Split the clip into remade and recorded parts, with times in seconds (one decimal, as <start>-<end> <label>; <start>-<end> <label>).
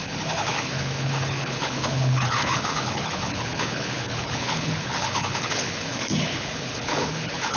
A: 0.0-7.6 remade